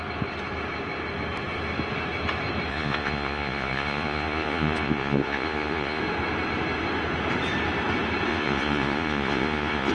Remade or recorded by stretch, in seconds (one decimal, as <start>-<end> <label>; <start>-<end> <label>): 0.0-2.7 recorded; 2.7-6.0 remade; 6.0-8.3 recorded; 8.3-9.9 remade